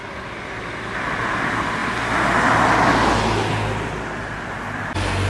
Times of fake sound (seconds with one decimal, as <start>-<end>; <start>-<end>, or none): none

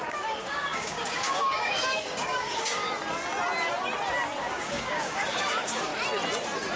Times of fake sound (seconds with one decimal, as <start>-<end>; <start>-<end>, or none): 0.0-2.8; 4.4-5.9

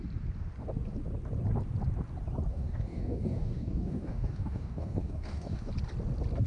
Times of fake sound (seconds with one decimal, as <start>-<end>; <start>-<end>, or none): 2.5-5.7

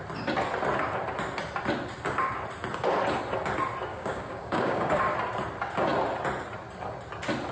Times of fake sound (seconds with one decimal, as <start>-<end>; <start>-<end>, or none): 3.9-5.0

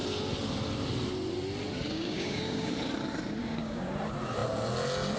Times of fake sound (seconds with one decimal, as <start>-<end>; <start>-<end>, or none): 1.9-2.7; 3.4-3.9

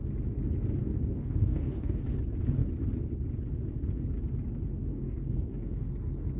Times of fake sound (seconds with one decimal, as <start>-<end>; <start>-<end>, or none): 0.8-2.0; 4.9-5.9